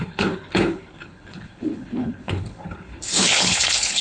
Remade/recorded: remade